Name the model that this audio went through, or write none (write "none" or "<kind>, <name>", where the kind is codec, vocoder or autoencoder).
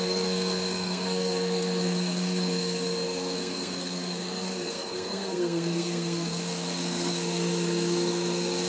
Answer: codec, SNAC